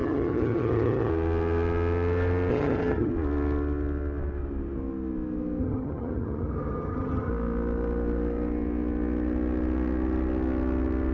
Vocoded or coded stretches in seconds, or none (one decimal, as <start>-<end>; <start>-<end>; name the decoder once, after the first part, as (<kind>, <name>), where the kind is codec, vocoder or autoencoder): 0.0-1.1 (vocoder, HiFi-GAN); 2.5-3.1; 5.6-7.3